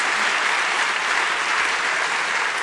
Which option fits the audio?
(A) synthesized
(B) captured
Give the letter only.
B